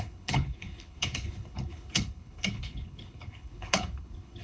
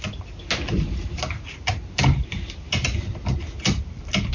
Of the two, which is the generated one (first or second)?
first